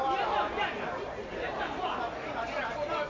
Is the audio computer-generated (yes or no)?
yes